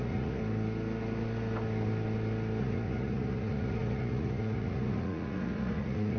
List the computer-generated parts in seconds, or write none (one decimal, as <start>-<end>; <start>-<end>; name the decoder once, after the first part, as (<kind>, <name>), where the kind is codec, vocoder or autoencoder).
0.0-0.4 (vocoder, Vocos); 2.6-6.2